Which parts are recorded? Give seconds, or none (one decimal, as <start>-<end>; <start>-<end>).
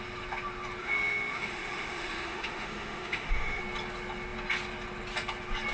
0.0-0.8; 3.6-5.7